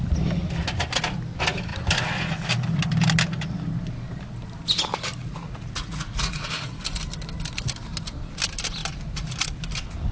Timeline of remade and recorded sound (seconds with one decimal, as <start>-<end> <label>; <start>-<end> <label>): 0.0-5.2 recorded; 5.2-6.4 remade; 6.4-10.1 recorded